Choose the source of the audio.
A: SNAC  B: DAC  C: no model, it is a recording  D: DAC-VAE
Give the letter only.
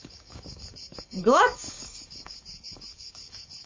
B